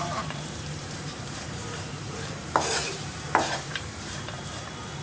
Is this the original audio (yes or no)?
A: no